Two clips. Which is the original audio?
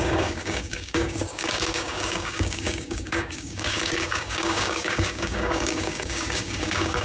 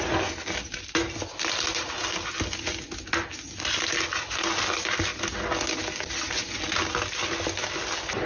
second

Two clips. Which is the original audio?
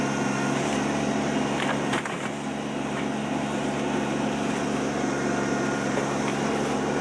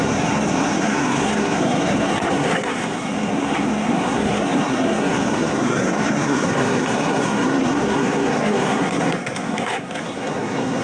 first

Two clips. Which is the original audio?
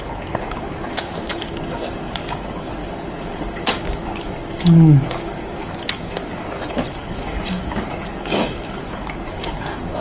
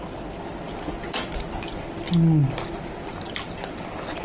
second